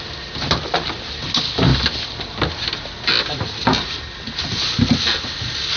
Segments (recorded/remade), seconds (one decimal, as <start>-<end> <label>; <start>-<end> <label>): 0.0-5.8 recorded